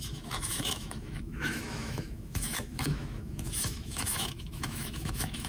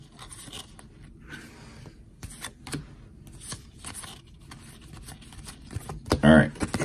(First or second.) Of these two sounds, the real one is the second